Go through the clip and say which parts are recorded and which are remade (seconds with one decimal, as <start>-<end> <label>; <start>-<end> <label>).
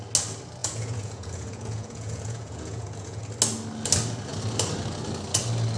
0.0-0.6 recorded; 0.6-3.2 remade; 3.2-5.8 recorded